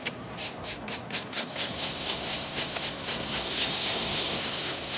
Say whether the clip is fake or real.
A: fake